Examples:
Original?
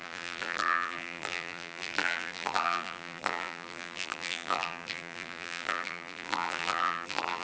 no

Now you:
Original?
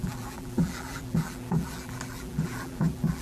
no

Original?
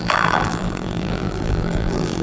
no